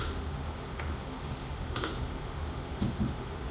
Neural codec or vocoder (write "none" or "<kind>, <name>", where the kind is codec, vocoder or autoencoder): autoencoder, DAC-VAE